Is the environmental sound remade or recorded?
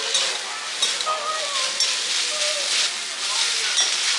recorded